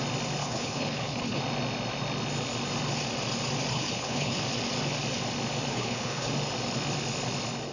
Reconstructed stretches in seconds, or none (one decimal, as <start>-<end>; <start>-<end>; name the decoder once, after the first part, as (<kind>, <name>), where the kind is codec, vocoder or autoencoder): 0.4-1.4 (codec, HILCodec); 3.7-4.4; 5.7-6.3